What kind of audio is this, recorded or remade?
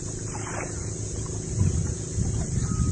recorded